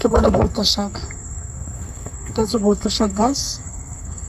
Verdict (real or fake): fake